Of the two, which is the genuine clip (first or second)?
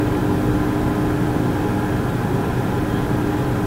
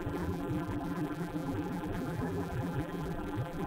first